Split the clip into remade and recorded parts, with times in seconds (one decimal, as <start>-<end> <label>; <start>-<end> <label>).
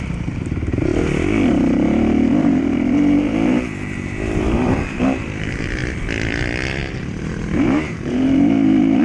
0.0-0.9 remade; 0.9-1.5 recorded; 1.5-5.8 remade; 5.8-6.8 recorded; 6.8-9.0 remade